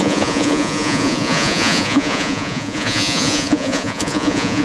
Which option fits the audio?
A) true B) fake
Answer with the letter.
B